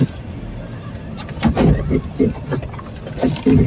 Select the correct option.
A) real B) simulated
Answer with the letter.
A